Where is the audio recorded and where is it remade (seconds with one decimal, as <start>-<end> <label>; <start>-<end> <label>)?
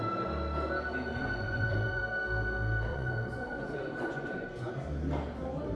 0.0-1.1 recorded; 1.1-2.0 remade; 2.0-2.9 recorded; 2.9-4.7 remade; 4.7-5.7 recorded